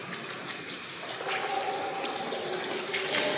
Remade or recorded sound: recorded